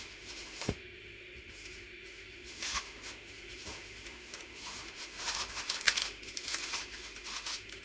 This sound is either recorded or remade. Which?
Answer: remade